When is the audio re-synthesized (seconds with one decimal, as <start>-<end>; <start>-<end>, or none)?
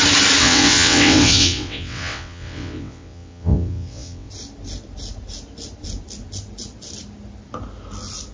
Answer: 0.4-4.3